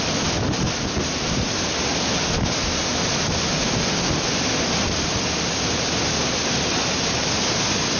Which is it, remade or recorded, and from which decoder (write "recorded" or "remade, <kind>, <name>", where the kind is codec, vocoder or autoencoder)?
recorded